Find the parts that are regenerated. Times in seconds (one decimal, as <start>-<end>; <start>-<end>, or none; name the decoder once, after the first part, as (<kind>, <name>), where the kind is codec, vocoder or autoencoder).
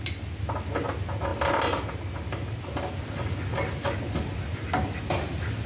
none